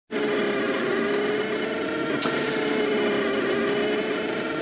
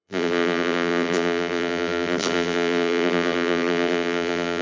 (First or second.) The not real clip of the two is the second